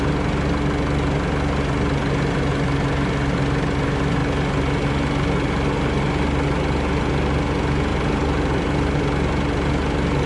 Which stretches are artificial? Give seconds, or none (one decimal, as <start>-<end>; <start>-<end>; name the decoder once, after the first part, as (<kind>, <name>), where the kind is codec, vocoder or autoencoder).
7.9-9.0 (vocoder, BigVGAN v2)